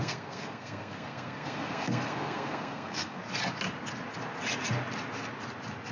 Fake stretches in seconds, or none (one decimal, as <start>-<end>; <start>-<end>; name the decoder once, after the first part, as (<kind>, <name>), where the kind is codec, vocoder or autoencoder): 0.0-3.2 (codec, SNAC)